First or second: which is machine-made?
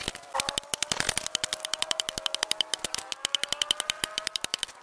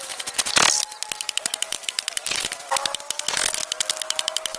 first